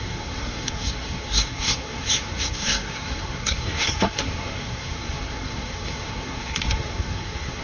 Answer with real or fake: fake